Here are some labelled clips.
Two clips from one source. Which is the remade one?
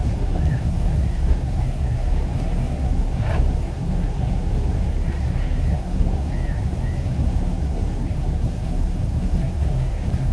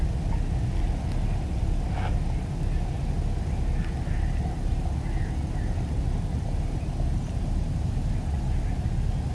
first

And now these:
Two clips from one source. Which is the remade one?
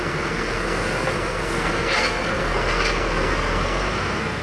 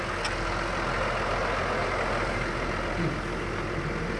first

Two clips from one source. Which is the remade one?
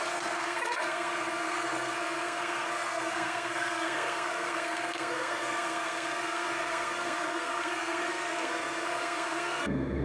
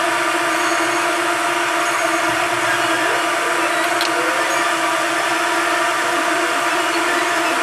first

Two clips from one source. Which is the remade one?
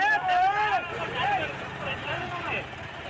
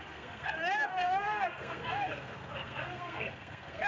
second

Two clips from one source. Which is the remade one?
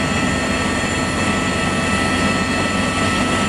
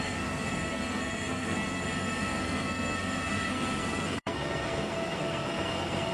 second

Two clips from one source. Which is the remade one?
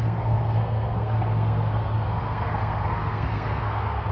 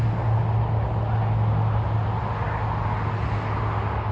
first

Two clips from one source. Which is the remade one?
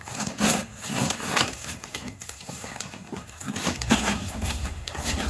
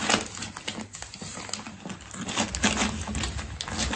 first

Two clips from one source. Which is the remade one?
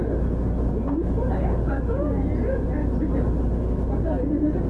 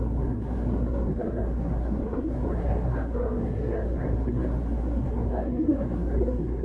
second